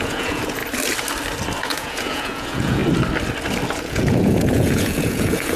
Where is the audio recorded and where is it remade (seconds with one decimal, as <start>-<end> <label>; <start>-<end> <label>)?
0.0-0.6 remade; 0.6-1.6 recorded; 1.6-2.8 remade; 2.8-3.7 recorded; 3.7-5.6 remade